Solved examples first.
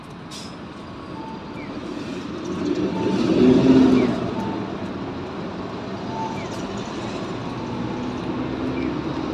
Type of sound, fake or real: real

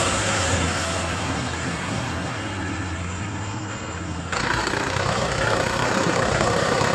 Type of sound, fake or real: fake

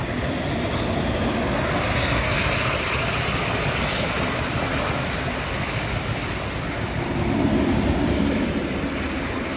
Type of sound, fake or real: real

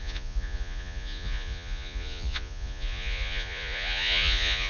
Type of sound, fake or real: fake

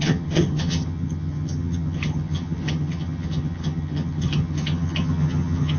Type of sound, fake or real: fake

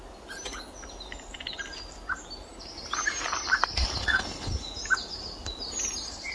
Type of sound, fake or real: real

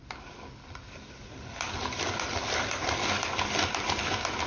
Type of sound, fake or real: real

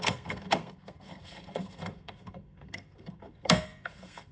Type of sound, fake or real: fake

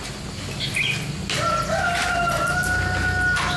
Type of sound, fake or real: real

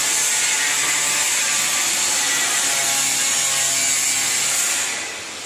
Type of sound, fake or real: real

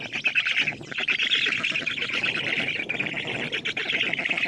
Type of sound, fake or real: real